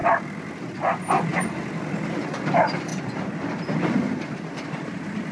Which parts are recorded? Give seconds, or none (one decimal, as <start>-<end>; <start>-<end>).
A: 0.0-0.6; 1.3-1.8; 2.9-4.3